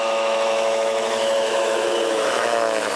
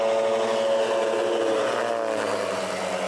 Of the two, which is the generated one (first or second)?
first